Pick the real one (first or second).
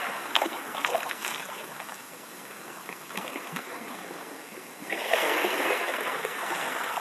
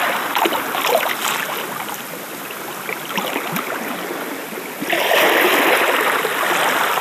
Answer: second